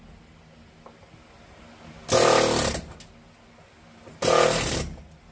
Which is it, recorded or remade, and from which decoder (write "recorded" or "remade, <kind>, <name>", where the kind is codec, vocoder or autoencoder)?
recorded